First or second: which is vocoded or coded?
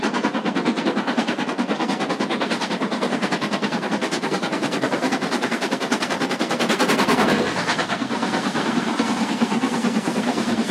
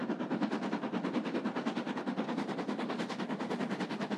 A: first